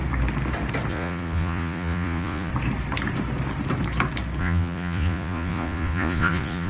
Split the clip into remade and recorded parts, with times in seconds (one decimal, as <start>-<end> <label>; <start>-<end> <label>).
0.0-0.9 recorded; 0.9-2.5 remade; 2.5-4.4 recorded; 4.4-6.7 remade